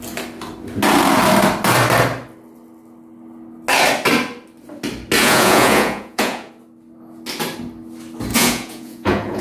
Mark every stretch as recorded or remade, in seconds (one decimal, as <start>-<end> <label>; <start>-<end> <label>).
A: 0.0-5.2 recorded; 5.2-6.5 remade; 6.5-8.3 recorded; 8.3-9.4 remade